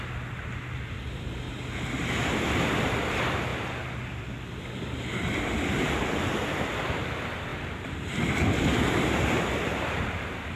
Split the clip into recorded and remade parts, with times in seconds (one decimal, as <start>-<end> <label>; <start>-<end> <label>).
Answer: 0.0-3.5 recorded; 3.5-4.5 remade; 4.5-10.6 recorded